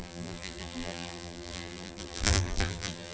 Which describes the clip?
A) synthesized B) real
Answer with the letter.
A